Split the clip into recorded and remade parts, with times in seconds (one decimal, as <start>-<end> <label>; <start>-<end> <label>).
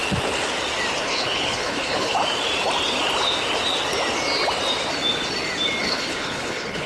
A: 0.0-1.0 recorded; 1.0-2.2 remade; 2.2-5.8 recorded; 5.8-6.9 remade